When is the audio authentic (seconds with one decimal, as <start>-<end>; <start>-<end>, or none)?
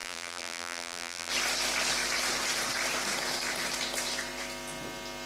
1.3-5.3